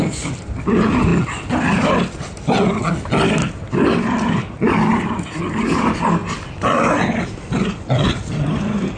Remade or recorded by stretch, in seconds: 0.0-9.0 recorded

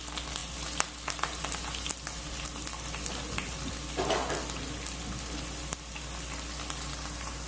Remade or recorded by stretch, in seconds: 0.0-0.4 recorded; 0.4-3.7 remade; 3.7-7.5 recorded

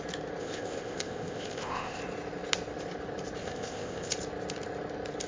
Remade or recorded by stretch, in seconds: 0.0-0.4 recorded; 0.4-2.0 remade; 2.0-3.4 recorded; 3.4-4.1 remade; 4.1-5.3 recorded

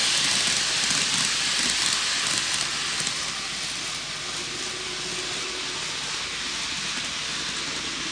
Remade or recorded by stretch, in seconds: 0.0-8.1 recorded

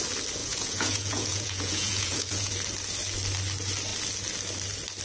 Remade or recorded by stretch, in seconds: 0.0-0.4 recorded; 0.4-2.5 remade; 2.5-5.0 recorded